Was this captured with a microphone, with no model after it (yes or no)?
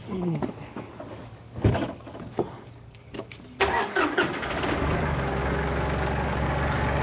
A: no